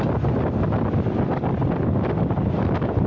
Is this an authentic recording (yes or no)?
yes